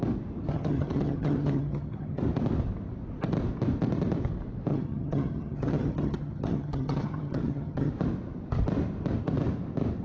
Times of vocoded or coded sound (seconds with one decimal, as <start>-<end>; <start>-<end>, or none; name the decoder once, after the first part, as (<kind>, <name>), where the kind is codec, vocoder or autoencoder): 0.5-2.2 (vocoder, HiFi-GAN); 4.7-7.9